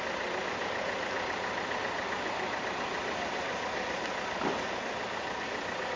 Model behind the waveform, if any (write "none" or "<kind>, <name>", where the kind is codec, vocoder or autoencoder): none